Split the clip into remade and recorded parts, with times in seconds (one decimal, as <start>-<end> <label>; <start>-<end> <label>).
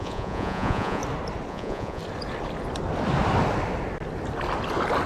0.0-1.0 remade; 1.0-1.5 recorded; 1.5-2.0 remade; 2.0-5.1 recorded